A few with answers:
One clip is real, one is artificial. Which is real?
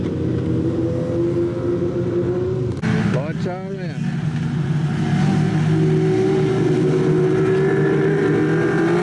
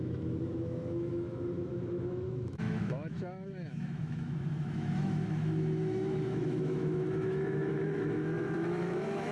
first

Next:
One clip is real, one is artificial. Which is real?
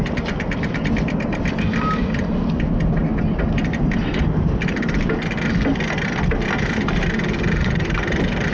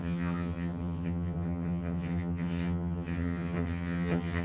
first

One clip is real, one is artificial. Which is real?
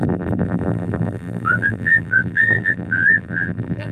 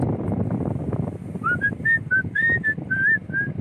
second